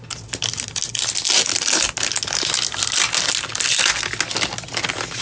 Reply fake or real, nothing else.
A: real